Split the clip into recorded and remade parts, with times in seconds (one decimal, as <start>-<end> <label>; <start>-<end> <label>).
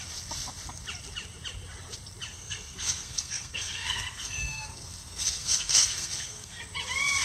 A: 0.0-2.3 recorded; 2.3-6.6 remade; 6.6-7.2 recorded